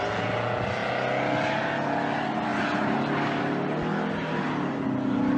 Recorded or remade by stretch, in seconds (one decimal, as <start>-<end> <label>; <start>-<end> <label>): 0.0-5.4 recorded